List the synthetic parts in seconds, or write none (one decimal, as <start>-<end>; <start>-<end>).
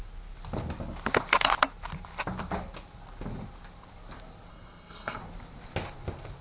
4.5-5.2